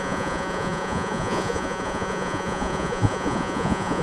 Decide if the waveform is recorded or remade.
remade